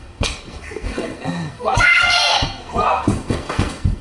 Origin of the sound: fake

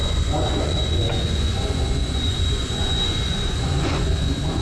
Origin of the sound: fake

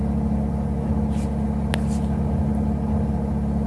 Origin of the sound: real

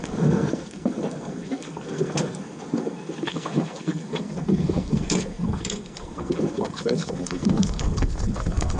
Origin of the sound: fake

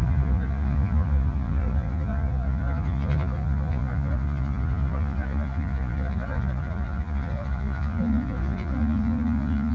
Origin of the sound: fake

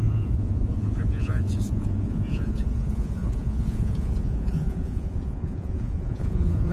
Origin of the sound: fake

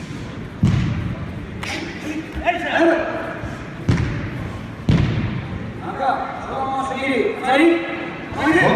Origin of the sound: real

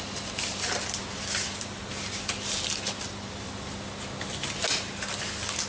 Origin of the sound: real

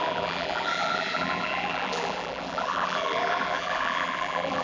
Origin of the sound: fake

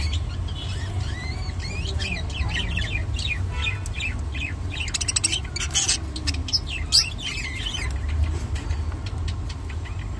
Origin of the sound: real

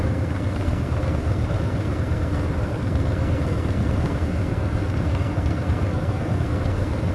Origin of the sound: fake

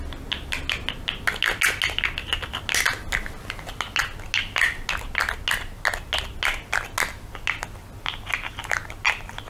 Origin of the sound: real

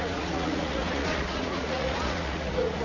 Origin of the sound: fake